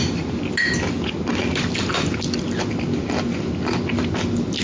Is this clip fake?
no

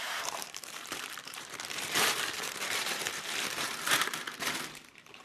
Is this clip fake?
yes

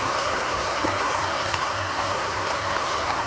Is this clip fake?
yes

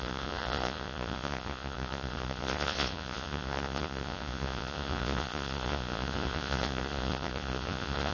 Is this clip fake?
yes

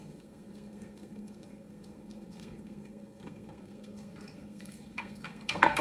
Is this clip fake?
yes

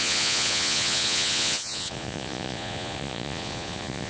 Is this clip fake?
yes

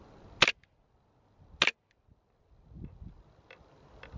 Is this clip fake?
no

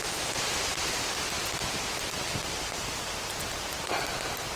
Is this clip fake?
no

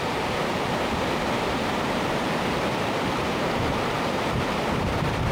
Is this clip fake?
yes